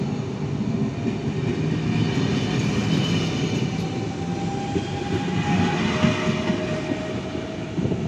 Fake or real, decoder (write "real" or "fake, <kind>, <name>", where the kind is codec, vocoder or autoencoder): real